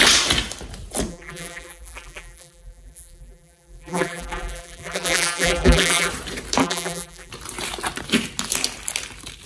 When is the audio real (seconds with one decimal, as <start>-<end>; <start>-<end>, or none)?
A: 0.0-1.1; 6.1-6.6; 7.3-9.5